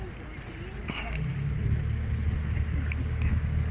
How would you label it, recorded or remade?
recorded